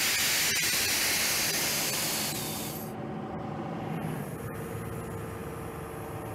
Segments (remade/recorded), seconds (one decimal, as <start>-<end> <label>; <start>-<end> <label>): 0.0-6.3 recorded